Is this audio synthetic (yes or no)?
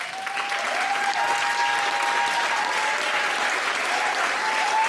no